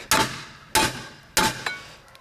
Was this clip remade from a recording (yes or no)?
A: no